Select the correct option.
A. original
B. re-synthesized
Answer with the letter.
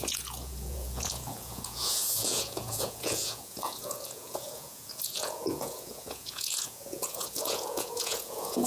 B